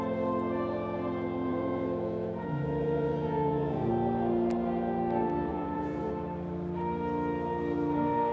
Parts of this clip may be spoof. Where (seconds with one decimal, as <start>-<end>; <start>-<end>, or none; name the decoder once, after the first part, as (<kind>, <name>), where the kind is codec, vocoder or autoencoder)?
1.5-3.9 (vocoder, Vocos); 5.5-6.1